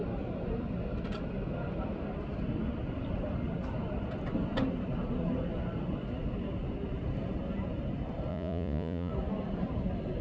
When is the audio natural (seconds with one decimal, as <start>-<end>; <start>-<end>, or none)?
0.0-8.3; 9.1-10.2